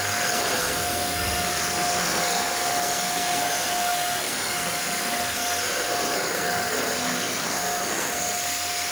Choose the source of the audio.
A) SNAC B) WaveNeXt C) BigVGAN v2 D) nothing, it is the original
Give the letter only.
A